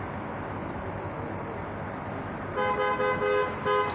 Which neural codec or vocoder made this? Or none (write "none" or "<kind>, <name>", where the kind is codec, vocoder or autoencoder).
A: none